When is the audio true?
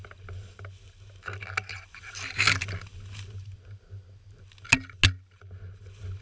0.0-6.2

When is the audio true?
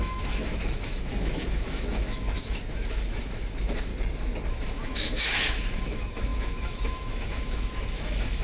3.9-4.5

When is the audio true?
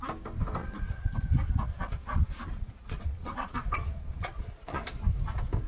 0.0-0.6; 1.1-1.7; 4.8-5.7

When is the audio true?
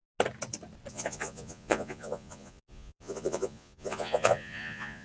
0.0-0.9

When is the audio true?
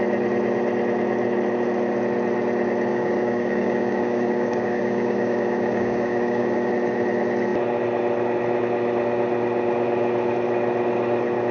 0.0-2.9; 6.7-11.5